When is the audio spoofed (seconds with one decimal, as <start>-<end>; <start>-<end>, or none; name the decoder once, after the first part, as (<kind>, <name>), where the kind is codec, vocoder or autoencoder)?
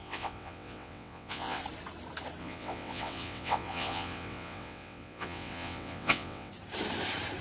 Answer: 0.0-1.6 (vocoder, WaveNeXt); 2.4-6.5